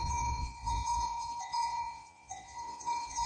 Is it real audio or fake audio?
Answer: fake